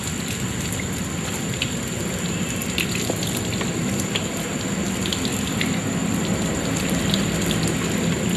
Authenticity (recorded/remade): recorded